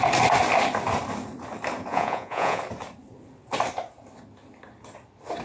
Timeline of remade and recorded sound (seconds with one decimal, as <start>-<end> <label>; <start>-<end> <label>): 0.0-1.9 recorded; 1.9-2.6 remade; 2.6-5.4 recorded